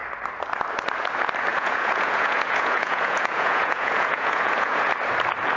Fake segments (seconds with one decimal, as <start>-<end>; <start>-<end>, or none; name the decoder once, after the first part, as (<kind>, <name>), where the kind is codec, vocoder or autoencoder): 1.5-4.9 (vocoder, Vocos)